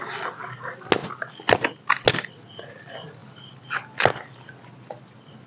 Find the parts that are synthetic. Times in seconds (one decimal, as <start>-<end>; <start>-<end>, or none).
none